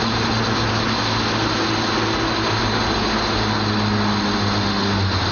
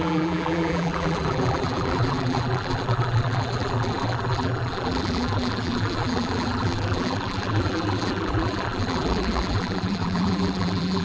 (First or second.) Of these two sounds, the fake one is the second